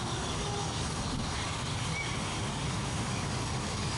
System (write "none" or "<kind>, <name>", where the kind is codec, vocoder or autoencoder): codec, DAC